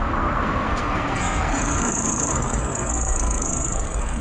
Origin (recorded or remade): remade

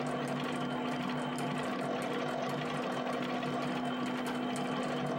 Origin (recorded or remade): recorded